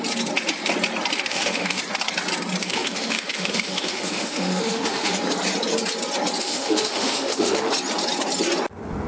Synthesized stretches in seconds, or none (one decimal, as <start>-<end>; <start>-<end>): 1.3-1.8; 2.6-5.2; 6.4-7.7